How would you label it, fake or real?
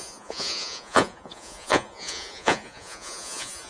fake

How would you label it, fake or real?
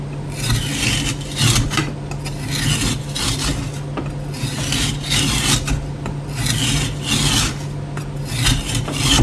real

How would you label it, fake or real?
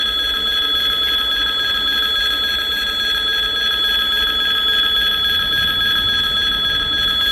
real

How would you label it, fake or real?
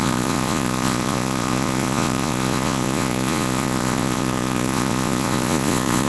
fake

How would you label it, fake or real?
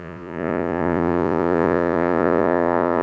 fake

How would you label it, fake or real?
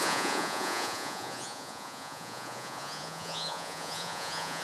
fake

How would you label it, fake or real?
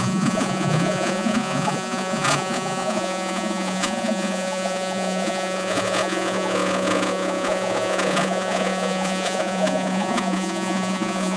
fake